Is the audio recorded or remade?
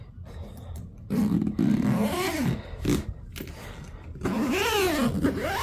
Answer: recorded